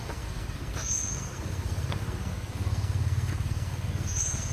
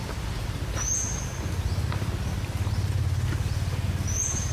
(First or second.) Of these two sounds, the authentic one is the second